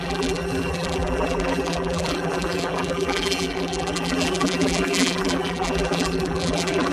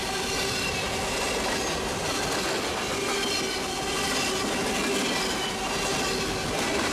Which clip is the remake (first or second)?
first